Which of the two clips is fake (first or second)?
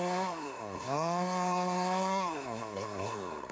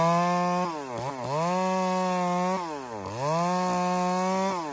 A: first